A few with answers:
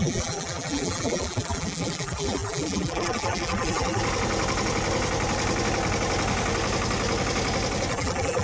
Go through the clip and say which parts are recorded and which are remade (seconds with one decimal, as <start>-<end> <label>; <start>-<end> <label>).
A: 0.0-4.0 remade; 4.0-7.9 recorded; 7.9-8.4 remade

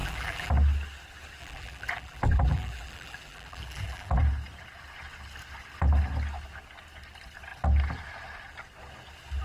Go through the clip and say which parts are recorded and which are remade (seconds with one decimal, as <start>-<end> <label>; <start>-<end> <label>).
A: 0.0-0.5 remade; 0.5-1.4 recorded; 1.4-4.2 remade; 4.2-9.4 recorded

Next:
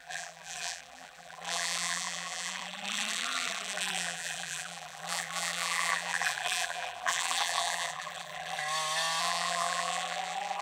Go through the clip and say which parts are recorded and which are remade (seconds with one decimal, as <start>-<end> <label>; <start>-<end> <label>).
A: 0.0-8.6 remade; 8.6-9.2 recorded; 9.2-10.6 remade